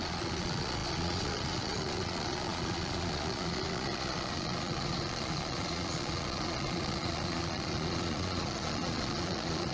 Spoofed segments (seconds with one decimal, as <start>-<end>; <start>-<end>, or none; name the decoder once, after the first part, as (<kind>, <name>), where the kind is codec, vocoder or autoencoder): 0.0-9.7 (vocoder, Vocos)